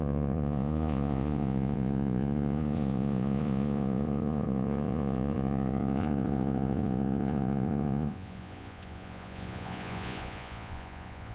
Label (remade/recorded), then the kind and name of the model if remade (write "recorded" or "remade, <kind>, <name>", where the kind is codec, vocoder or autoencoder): remade, vocoder, Vocos